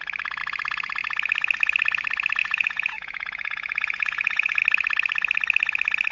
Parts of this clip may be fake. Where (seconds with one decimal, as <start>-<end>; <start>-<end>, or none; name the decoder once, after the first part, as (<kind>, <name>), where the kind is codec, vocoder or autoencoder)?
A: 2.4-4.6 (vocoder, Vocos)